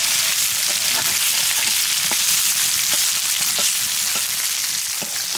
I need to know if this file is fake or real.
real